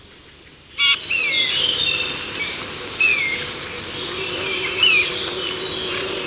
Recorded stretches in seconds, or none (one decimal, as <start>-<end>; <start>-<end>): 0.0-6.3